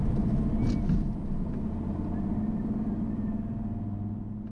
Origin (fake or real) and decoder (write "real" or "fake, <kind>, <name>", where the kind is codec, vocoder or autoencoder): real